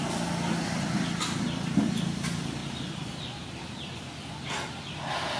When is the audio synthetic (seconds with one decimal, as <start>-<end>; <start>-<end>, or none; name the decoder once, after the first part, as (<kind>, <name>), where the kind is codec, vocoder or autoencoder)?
2.6-3.3 (vocoder, BigVGAN v2)